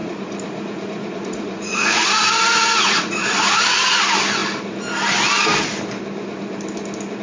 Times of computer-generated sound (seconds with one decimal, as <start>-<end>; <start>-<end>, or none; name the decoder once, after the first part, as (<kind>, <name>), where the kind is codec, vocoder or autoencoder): 0.0-4.0 (vocoder, Vocos)